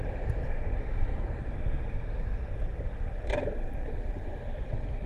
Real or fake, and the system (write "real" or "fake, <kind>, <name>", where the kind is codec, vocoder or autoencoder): real